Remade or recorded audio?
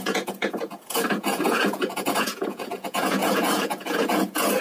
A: remade